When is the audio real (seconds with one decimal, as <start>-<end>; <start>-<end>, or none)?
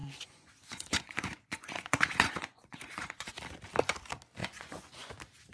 3.3-4.4; 5.1-5.5